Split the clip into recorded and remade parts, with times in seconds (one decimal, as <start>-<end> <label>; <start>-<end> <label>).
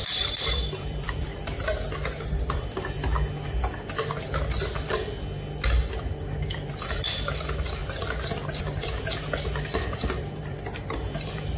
0.0-1.7 remade; 1.7-2.2 recorded; 2.2-3.1 remade; 3.1-7.0 recorded; 7.0-7.8 remade; 7.8-8.6 recorded; 8.6-11.6 remade